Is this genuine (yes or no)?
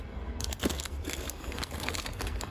no